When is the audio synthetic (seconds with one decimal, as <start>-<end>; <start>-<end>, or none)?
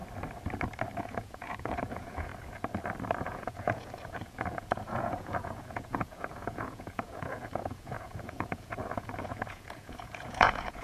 1.0-2.3; 3.2-10.8